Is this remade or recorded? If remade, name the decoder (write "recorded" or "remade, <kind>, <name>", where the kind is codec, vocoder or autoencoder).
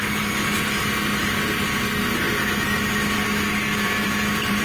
recorded